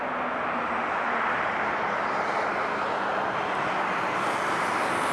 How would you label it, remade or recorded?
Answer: recorded